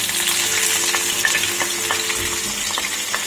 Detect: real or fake real